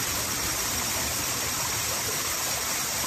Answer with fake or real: fake